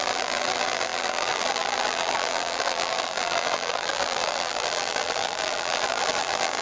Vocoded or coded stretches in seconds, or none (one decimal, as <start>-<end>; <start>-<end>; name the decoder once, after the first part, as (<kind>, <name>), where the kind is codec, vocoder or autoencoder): 0.0-6.6 (vocoder, BigVGAN v2)